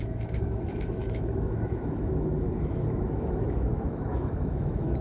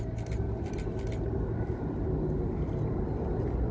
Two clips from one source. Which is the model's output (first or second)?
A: first